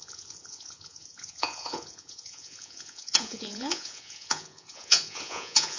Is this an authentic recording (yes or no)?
no